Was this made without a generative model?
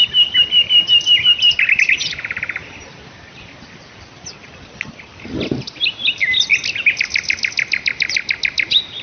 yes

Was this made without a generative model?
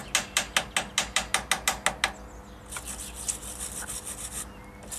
yes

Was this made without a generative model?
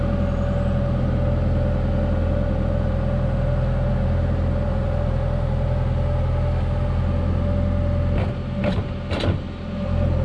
yes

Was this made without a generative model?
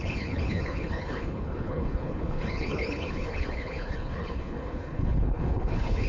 no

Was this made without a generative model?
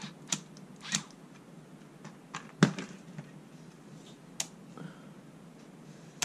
yes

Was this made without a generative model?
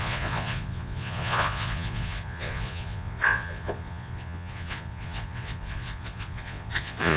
no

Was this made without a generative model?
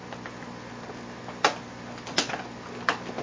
yes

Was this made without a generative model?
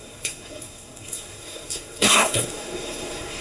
no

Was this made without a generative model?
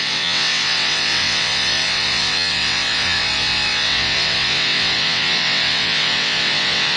no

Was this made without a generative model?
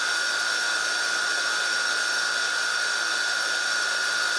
yes